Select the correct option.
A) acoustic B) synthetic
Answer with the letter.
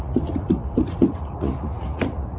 B